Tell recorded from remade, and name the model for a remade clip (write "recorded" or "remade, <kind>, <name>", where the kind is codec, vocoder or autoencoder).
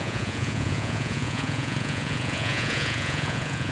remade, vocoder, Vocos